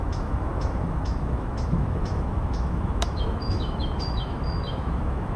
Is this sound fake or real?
fake